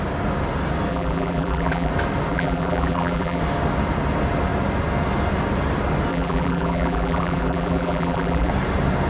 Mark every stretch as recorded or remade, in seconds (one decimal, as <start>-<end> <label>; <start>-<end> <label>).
0.0-0.9 recorded; 0.9-1.9 remade; 1.9-2.3 recorded; 2.3-3.4 remade; 3.4-6.1 recorded; 6.1-8.5 remade; 8.5-9.1 recorded